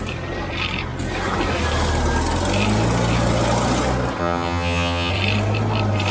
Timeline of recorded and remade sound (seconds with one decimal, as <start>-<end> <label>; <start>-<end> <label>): 0.0-4.2 recorded; 4.2-5.1 remade; 5.1-6.1 recorded